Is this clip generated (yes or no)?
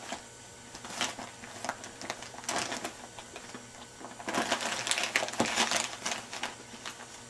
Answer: no